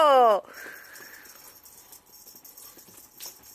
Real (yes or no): yes